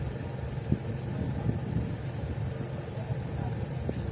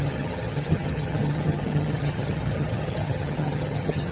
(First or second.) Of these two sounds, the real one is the first